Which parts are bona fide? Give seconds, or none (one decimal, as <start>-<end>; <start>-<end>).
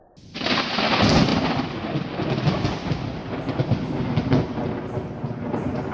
0.0-5.9